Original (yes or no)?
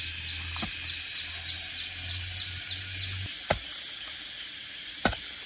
yes